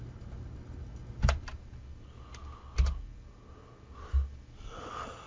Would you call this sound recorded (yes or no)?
yes